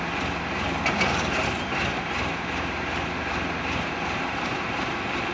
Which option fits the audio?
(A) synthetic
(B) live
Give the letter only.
A